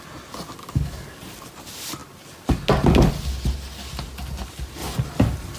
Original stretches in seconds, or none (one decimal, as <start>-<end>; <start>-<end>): 0.0-0.6; 1.2-5.6